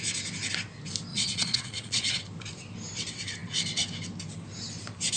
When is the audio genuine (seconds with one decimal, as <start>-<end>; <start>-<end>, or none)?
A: 0.0-1.1; 2.2-5.2

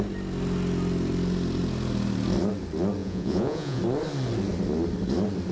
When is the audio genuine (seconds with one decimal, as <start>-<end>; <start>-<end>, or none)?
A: 0.0-3.0; 3.8-5.5

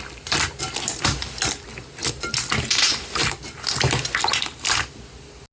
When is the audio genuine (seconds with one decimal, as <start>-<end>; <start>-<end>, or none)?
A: 0.0-5.5

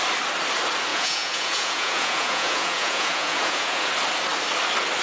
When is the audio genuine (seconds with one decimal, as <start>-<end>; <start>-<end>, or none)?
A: 0.0-0.9; 3.9-5.0

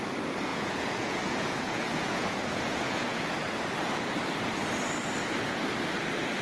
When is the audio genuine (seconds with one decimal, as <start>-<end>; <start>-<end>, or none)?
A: 0.0-0.5; 3.2-5.2; 5.7-6.4